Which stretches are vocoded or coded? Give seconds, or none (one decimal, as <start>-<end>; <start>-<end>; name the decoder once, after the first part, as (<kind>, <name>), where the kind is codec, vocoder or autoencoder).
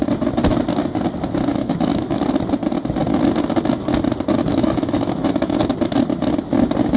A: 1.5-2.2 (autoencoder, DAC-VAE); 4.5-5.6